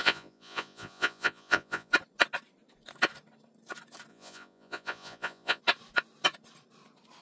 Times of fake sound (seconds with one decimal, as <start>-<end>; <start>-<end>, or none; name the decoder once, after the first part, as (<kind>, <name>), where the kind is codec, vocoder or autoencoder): 0.0-1.9 (vocoder, Vocos); 4.1-5.6

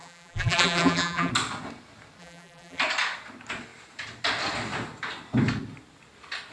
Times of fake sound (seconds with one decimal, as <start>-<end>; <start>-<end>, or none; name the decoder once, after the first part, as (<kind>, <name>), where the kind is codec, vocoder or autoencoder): 0.0-1.3 (vocoder, BigVGAN v2); 2.2-2.8

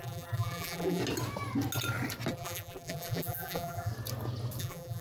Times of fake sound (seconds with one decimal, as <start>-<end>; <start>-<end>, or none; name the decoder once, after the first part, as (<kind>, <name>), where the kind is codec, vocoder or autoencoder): 0.0-1.0 (vocoder, BigVGAN v2); 2.3-3.9; 4.6-5.0

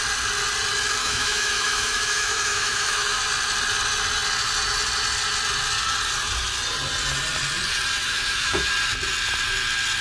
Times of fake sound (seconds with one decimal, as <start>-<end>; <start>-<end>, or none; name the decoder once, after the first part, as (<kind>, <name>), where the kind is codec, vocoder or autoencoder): 1.0-3.2 (autoencoder, DAC-VAE); 8.0-8.7

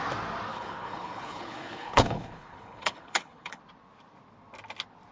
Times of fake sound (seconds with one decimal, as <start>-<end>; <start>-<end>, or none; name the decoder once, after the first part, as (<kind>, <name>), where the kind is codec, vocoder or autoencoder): 0.5-3.6 (codec, HILCodec)

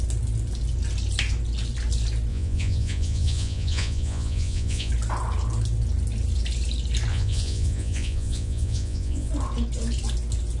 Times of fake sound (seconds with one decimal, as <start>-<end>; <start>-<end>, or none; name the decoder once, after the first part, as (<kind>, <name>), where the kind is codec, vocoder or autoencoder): 2.3-4.9 (vocoder, Vocos); 7.1-9.3